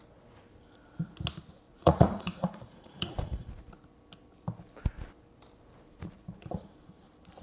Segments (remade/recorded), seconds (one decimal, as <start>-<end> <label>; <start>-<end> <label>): 0.0-1.7 recorded; 1.7-3.5 remade; 3.5-7.4 recorded